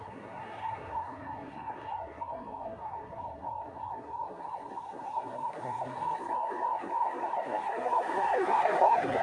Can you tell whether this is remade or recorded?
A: remade